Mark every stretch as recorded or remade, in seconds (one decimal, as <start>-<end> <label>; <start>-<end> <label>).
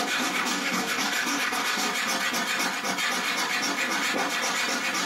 0.0-1.9 remade; 1.9-5.1 recorded